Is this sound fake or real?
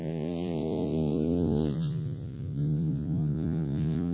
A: fake